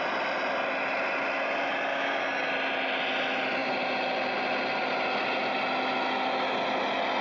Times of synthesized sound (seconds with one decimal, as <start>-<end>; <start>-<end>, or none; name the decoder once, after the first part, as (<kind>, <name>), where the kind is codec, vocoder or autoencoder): 1.9-2.5 (codec, DAC)